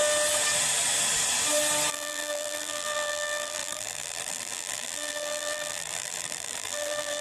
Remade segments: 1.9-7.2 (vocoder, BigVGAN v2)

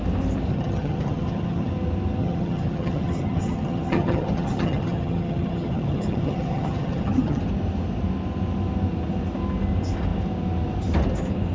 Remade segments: 0.5-1.7 (vocoder, HiFi-GAN); 2.2-7.4

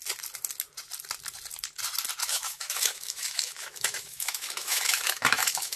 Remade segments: 2.2-5.8 (autoencoder, DAC-VAE)

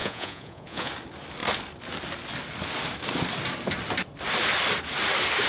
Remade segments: 0.0-0.9 (vocoder, Vocos)